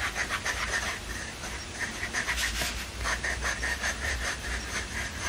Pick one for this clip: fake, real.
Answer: fake